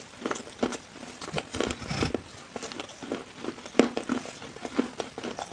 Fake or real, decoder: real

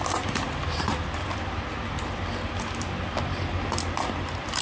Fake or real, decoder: real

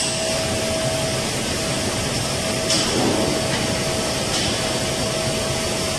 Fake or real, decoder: real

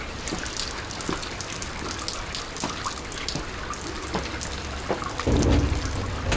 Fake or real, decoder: real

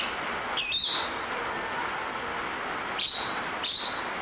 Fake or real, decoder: real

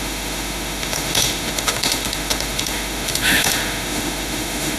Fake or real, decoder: fake, autoencoder, DAC-VAE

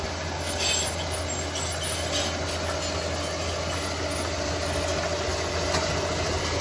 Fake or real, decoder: real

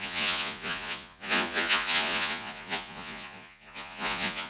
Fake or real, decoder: fake, vocoder, Vocos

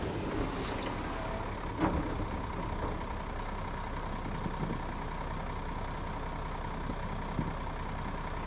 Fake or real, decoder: real